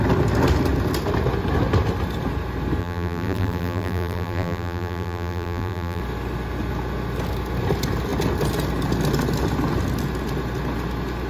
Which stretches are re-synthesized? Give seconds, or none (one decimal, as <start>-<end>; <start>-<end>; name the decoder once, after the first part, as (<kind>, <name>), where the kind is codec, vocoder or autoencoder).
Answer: 2.8-6.0 (vocoder, BigVGAN v2)